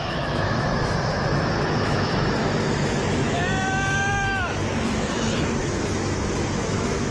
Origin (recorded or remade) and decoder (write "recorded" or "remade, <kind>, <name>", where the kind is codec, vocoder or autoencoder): remade, autoencoder, DAC-VAE